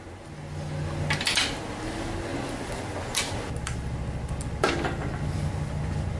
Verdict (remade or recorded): recorded